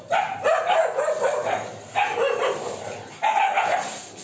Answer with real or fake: real